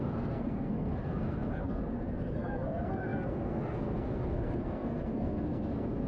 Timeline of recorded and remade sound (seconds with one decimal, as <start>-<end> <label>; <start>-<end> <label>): 0.0-6.1 remade